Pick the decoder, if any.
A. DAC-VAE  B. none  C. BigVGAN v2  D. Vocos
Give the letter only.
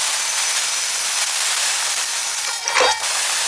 B